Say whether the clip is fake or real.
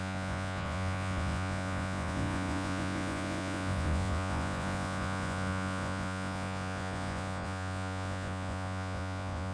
fake